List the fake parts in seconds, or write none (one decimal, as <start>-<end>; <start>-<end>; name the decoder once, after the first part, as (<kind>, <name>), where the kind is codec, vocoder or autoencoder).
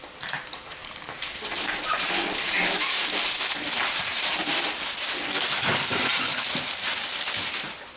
0.8-5.2 (vocoder, BigVGAN v2)